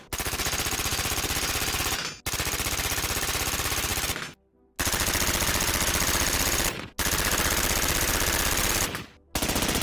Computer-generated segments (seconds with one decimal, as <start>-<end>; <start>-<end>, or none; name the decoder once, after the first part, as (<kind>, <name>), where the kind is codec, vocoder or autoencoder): 0.9-1.8 (vocoder, BigVGAN v2)